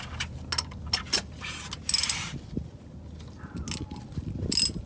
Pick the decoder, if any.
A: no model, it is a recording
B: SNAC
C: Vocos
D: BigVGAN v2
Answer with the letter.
A